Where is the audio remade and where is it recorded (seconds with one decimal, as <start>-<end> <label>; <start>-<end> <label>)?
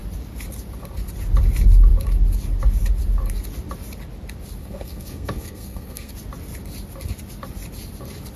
0.0-4.6 recorded; 4.6-6.1 remade; 6.1-8.4 recorded